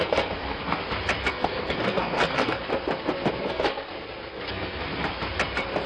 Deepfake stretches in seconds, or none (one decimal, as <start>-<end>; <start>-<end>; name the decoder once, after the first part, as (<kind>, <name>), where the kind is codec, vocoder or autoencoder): 0.0-0.8 (codec, SNAC); 1.3-2.6; 3.5-3.9; 4.5-4.9